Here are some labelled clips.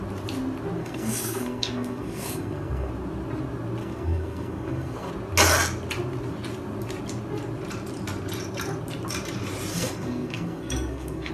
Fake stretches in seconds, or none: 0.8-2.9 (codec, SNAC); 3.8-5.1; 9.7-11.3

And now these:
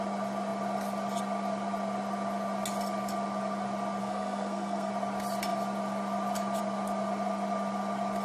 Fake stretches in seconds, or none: 4.0-4.9 (codec, SNAC)

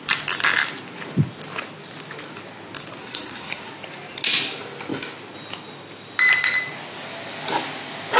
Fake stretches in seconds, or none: 3.0-3.7 (codec, SNAC)

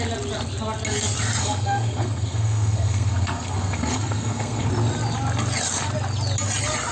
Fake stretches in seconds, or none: 1.4-4.7 (codec, SNAC)

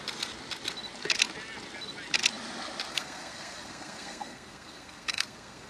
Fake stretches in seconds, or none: 2.9-5.7 (codec, SNAC)

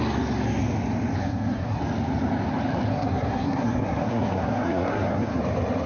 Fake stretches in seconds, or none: 1.2-1.8 (codec, SNAC); 2.9-5.4

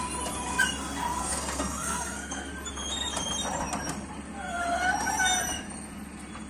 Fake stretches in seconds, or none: 1.2-2.5 (codec, SNAC)

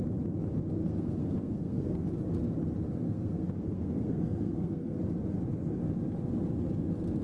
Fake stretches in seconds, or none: 0.8-2.1 (codec, SNAC); 2.9-5.0